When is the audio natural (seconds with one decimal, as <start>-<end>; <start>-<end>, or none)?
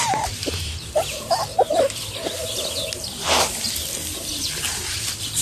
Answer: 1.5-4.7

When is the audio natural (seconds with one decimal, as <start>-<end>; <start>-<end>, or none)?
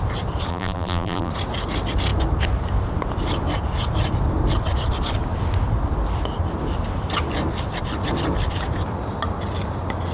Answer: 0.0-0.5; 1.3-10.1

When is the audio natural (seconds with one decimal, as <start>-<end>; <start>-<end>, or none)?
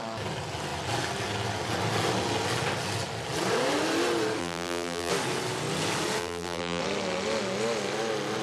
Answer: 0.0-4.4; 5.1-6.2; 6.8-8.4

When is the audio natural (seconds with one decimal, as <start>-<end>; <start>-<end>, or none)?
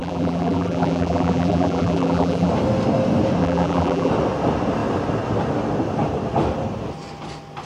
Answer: 2.5-3.4; 4.1-7.7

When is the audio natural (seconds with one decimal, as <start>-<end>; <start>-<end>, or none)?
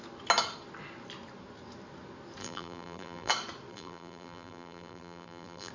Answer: 0.0-2.4; 3.3-3.7